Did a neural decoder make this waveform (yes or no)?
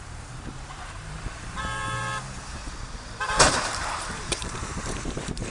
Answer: yes